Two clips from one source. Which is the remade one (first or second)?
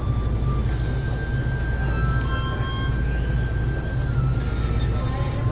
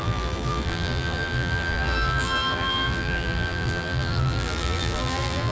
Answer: second